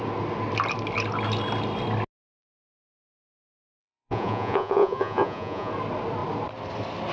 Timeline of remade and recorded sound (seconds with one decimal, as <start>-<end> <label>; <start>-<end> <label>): 0.0-2.4 recorded; 2.4-5.7 remade; 5.7-7.1 recorded